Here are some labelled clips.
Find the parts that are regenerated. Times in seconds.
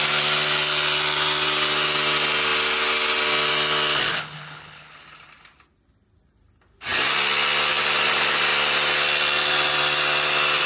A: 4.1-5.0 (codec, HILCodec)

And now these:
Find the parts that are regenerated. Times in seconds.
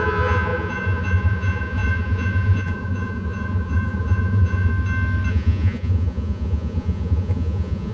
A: 0.0-4.7 (vocoder, Vocos); 5.3-7.9